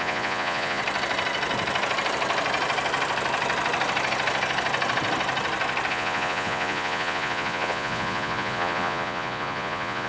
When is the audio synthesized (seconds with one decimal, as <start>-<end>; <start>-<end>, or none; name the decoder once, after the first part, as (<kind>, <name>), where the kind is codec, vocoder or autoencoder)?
0.0-0.8 (vocoder, Vocos); 5.9-10.1